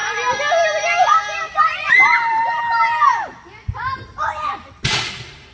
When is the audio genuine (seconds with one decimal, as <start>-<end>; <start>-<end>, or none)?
0.0-1.9; 3.3-3.8